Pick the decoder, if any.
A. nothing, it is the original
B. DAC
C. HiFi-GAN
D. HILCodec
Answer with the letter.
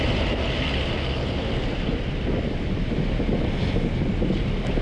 A